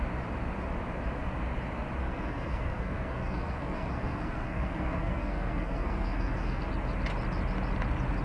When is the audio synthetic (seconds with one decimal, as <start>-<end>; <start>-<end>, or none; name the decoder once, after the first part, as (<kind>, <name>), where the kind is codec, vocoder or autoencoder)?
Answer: 2.0-6.7 (codec, SNAC)